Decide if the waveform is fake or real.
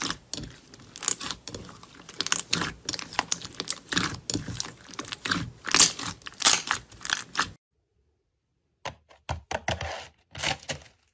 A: real